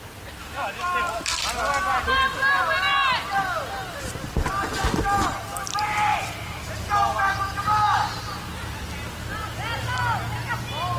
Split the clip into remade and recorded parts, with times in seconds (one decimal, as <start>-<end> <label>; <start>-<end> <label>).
0.0-11.0 recorded